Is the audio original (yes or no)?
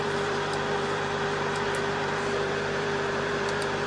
no